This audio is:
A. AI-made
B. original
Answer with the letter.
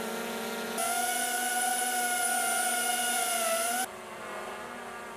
B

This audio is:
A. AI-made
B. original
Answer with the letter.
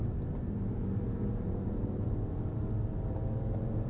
A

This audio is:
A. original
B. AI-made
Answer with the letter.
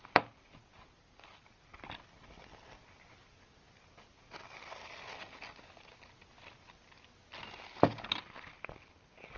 A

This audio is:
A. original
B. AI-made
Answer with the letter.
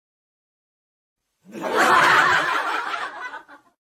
B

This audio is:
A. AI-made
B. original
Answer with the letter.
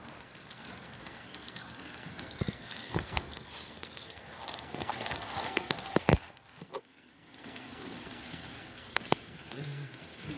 A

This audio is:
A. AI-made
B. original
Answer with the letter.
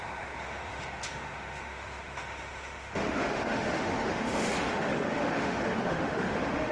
A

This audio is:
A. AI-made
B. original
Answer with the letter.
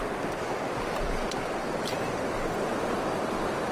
A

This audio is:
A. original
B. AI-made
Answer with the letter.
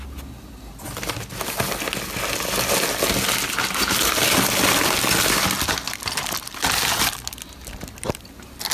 A